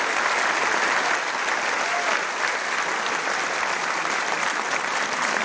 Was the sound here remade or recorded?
recorded